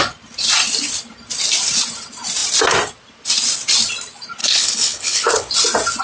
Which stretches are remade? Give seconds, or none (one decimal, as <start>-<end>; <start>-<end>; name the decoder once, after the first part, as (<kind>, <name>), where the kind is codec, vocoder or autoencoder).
4.4-5.5 (codec, HILCodec)